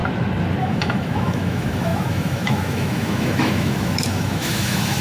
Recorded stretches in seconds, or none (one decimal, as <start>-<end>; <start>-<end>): 0.0-0.6